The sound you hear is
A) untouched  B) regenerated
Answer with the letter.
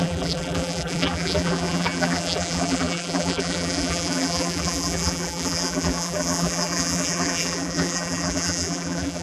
B